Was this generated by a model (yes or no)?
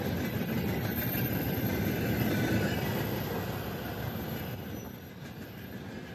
no